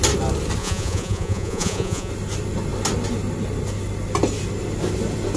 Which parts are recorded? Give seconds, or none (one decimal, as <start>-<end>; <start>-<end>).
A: 0.0-0.6; 2.1-5.4